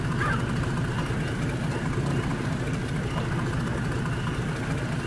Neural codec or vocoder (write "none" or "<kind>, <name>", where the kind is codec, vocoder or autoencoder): none